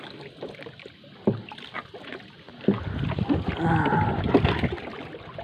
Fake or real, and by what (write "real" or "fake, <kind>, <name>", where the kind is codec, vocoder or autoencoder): real